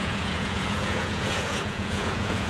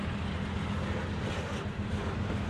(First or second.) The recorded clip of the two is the second